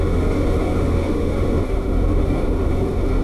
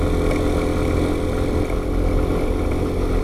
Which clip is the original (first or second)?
second